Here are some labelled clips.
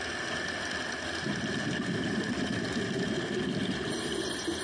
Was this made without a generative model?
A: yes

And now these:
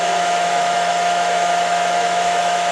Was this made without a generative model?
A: no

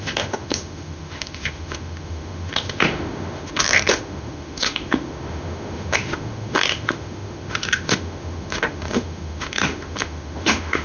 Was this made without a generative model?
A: no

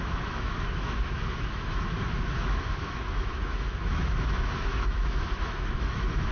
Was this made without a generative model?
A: no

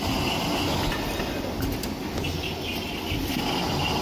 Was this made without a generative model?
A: yes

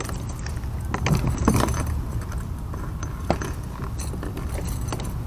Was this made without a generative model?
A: yes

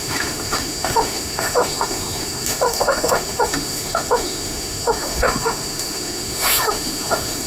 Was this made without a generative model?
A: no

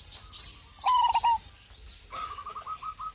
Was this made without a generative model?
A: yes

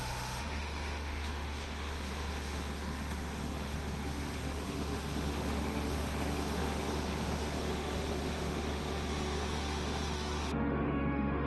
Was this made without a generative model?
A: no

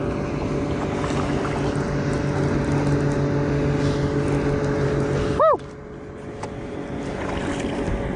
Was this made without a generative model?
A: yes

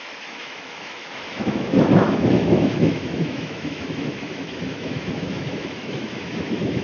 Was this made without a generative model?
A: no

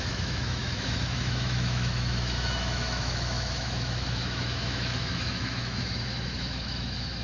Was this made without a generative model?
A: no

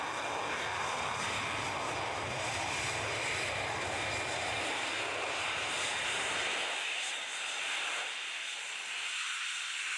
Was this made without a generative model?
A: yes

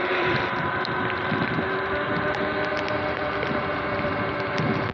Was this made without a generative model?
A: yes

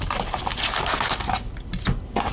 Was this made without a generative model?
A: yes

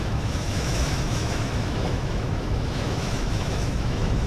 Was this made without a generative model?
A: no